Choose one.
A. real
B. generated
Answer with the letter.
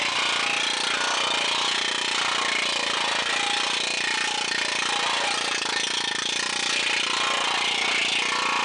A